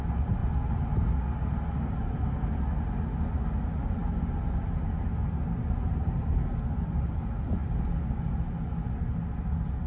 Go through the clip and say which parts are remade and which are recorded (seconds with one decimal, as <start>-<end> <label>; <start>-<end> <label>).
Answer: 0.0-9.9 recorded